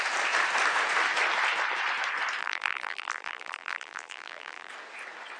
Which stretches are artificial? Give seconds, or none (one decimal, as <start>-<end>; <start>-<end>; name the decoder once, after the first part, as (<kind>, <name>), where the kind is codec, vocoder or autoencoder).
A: 2.4-4.7 (vocoder, BigVGAN v2)